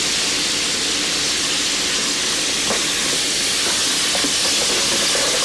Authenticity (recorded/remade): recorded